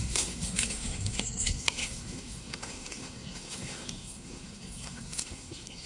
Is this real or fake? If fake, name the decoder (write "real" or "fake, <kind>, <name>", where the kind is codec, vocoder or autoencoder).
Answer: fake, codec, SNAC